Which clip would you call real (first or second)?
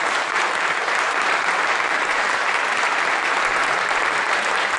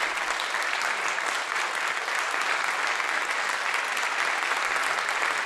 second